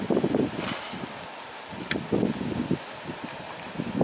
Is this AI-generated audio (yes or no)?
no